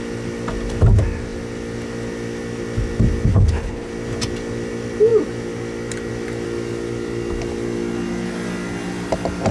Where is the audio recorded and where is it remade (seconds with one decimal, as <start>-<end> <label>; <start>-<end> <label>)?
0.0-3.3 recorded; 3.3-3.9 remade; 3.9-9.5 recorded